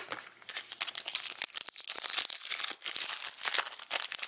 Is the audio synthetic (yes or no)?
no